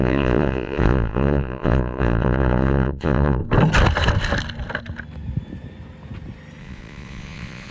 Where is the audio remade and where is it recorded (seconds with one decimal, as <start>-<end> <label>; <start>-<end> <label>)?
0.0-3.4 remade; 3.4-6.6 recorded; 6.6-7.7 remade